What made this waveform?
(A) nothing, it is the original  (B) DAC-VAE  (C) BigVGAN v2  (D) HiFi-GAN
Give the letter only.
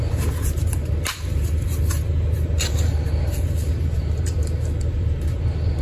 C